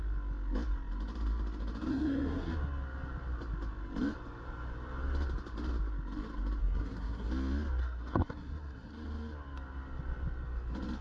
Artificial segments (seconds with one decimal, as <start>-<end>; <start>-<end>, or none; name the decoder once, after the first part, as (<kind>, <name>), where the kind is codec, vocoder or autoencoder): 1.9-2.5 (codec, SNAC); 6.6-7.3; 7.8-8.9